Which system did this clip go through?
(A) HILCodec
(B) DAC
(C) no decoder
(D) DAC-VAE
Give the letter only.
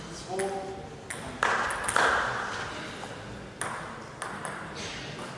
C